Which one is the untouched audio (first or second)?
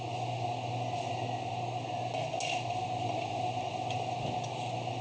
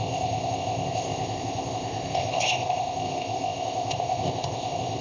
first